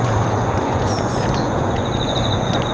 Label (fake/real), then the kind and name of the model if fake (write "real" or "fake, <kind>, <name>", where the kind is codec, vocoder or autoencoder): fake, vocoder, Vocos